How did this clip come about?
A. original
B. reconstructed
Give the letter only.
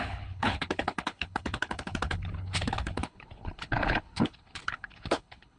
B